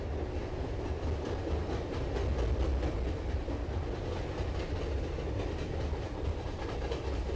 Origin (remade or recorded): recorded